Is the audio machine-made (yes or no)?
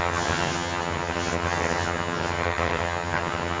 yes